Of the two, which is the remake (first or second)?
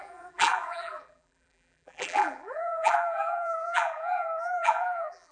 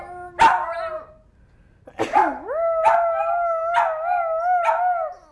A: first